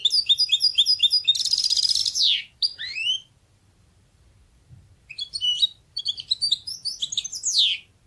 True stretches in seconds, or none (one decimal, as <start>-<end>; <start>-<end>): 0.0-2.0; 6.0-8.1